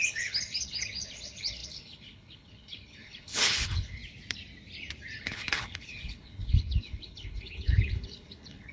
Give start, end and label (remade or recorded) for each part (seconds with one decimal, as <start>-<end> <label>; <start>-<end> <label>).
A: 0.0-4.0 remade; 4.0-5.2 recorded; 5.2-8.7 remade